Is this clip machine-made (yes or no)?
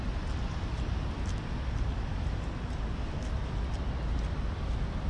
no